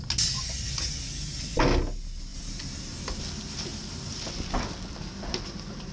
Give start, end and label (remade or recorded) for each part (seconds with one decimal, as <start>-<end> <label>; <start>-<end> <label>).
0.0-2.3 recorded; 2.3-2.8 remade; 2.8-3.7 recorded; 3.7-4.3 remade; 4.3-5.9 recorded